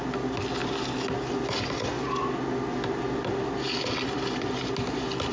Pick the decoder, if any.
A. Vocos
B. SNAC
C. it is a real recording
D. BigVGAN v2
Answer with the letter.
C